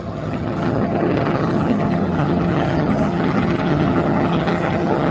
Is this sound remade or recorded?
remade